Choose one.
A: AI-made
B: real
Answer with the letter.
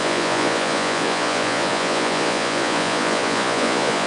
A